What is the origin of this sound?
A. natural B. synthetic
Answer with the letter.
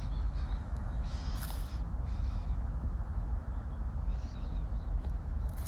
B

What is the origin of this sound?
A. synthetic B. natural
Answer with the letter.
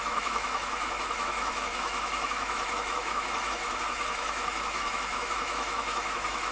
A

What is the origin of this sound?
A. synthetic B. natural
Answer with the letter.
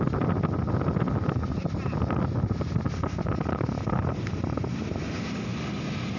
B